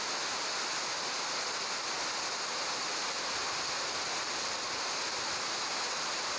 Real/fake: real